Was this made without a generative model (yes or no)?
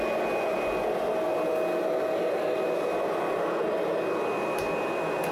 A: yes